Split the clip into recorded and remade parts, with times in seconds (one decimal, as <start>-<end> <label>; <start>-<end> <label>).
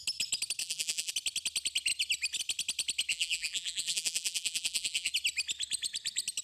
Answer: 0.0-0.6 recorded; 0.6-1.1 remade; 1.1-3.1 recorded; 3.1-5.1 remade; 5.1-6.4 recorded